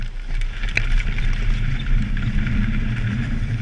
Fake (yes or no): no